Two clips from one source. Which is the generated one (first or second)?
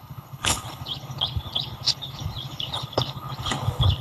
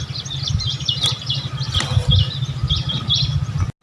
first